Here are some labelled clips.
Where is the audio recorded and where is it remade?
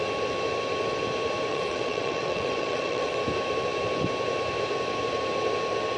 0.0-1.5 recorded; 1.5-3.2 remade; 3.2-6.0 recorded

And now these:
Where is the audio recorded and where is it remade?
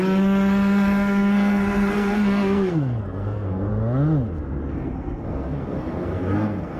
0.0-3.7 remade; 3.7-4.7 recorded; 4.7-6.8 remade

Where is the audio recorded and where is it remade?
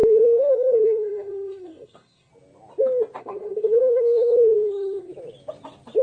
0.0-2.3 remade; 2.3-3.2 recorded; 3.2-5.1 remade; 5.1-6.0 recorded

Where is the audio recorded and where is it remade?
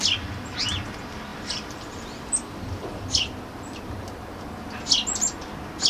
0.0-1.3 recorded; 1.3-3.0 remade; 3.0-5.9 recorded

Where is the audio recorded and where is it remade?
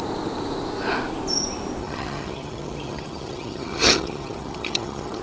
0.0-1.8 recorded; 1.8-5.2 remade